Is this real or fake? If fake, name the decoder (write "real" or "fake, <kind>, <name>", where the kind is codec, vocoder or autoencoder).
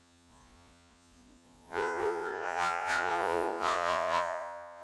fake, vocoder, Vocos